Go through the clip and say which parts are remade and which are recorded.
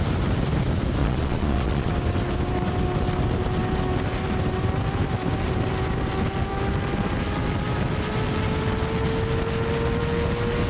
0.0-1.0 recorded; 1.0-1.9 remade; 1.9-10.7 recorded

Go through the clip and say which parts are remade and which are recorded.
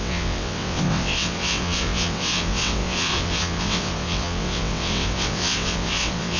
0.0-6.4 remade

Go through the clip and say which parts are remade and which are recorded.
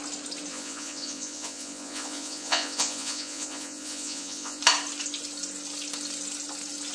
0.0-0.5 recorded; 0.5-4.6 remade; 4.6-6.9 recorded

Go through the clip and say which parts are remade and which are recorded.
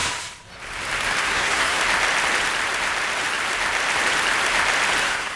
0.0-1.2 recorded; 1.2-1.8 remade; 1.8-5.0 recorded; 5.0-5.4 remade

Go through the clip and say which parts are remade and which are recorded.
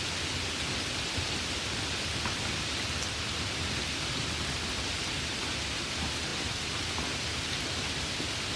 0.0-8.6 recorded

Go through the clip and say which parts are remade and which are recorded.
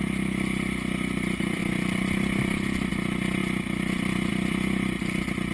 0.0-1.6 remade; 1.6-2.9 recorded; 2.9-3.4 remade; 3.4-4.3 recorded; 4.3-5.5 remade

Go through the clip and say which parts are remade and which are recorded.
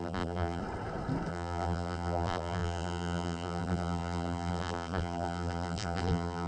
0.0-0.6 remade; 0.6-1.3 recorded; 1.3-6.5 remade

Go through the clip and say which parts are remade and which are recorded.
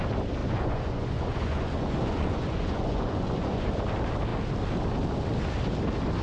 0.0-0.4 recorded; 0.4-3.7 remade; 3.7-6.2 recorded